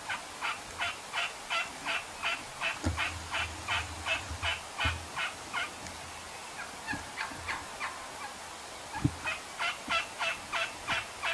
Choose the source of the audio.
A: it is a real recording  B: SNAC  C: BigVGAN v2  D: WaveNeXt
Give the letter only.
A